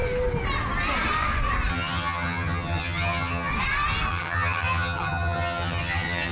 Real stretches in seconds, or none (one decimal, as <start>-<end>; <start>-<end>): 0.0-1.7; 3.5-4.1